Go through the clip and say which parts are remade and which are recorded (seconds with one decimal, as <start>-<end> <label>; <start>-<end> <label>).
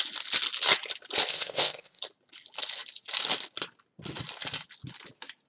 0.0-1.3 recorded; 1.3-2.0 remade; 2.0-5.5 recorded